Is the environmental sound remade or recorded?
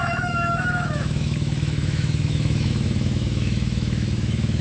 remade